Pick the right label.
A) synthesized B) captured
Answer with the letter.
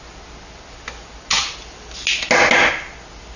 B